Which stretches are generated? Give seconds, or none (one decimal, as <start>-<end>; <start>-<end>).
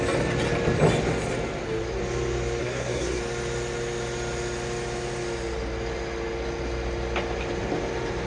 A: 2.6-3.2